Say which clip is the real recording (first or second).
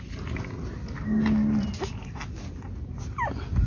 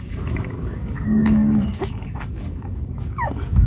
first